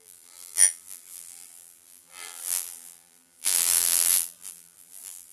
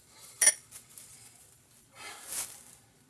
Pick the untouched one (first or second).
second